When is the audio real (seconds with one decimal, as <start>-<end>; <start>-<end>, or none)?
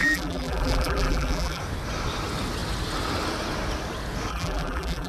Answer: 1.6-4.3